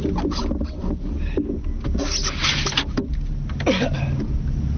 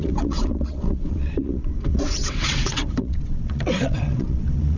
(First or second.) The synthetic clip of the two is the second